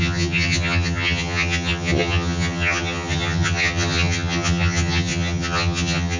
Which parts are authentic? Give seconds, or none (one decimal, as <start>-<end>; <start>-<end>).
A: none